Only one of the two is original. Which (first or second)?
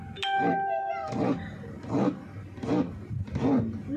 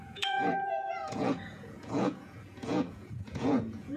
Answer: first